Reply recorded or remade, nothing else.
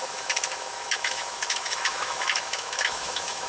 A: remade